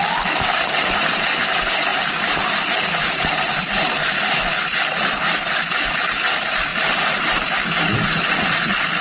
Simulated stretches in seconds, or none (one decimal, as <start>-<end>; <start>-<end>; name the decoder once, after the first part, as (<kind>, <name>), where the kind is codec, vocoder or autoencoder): none